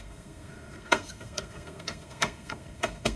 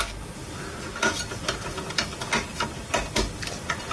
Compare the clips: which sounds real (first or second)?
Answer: second